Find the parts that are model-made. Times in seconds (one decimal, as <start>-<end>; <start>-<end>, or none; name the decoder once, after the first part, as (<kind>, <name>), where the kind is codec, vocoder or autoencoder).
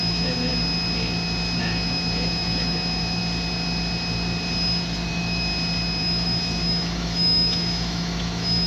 0.0-0.5 (autoencoder, DAC-VAE); 1.6-3.2; 5.1-5.5; 6.0-8.7